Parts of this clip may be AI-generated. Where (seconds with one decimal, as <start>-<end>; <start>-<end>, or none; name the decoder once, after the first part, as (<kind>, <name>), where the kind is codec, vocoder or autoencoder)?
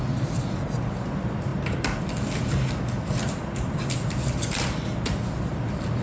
none